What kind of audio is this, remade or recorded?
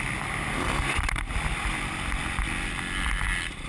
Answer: recorded